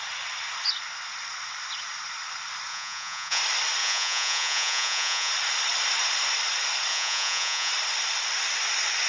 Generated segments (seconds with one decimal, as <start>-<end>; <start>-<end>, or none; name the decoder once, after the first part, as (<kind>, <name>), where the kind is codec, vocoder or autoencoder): 2.7-3.4 (vocoder, Vocos); 3.8-5.3; 6.9-7.7